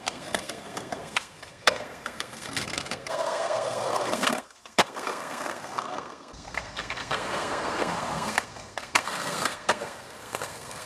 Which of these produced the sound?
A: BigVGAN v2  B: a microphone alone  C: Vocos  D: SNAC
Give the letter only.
D